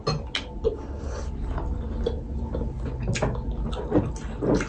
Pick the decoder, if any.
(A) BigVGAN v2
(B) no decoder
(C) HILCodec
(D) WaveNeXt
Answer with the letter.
B